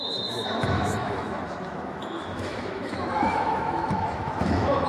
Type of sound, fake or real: fake